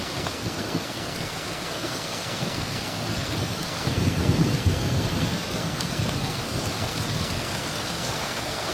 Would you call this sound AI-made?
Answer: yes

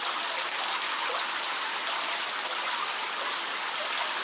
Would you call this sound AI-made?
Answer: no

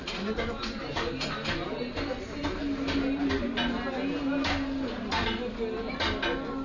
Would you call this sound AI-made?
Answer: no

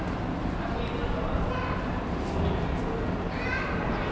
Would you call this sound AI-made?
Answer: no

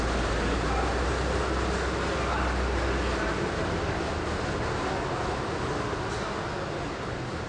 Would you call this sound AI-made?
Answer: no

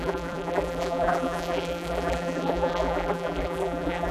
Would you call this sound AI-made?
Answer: yes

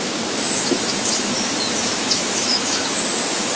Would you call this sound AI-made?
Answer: yes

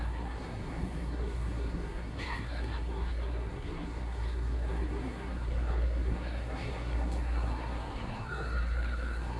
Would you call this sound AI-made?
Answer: yes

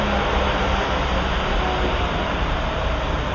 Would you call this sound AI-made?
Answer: no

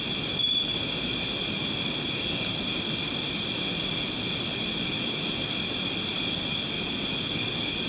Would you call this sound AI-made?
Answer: no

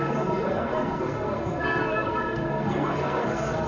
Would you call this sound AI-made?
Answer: yes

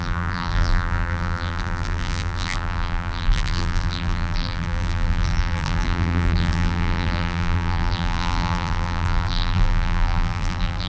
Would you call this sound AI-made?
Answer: yes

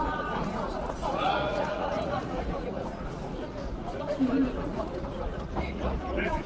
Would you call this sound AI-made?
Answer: yes